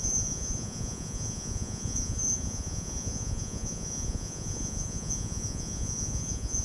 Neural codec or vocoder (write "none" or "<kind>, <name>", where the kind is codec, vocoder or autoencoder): vocoder, Vocos